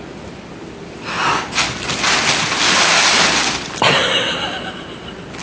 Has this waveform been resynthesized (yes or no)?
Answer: no